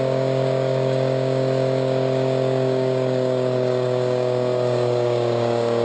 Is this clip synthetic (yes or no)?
yes